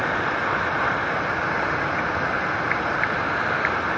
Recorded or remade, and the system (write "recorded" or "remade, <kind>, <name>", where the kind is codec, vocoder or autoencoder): recorded